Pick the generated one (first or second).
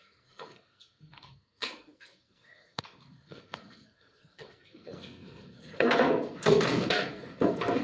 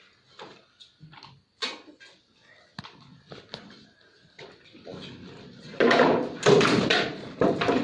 first